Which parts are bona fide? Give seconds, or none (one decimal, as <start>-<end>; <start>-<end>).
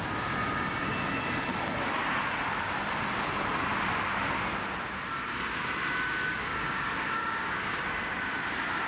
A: 0.0-6.3; 7.8-8.9